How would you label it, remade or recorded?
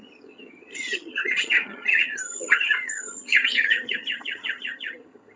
remade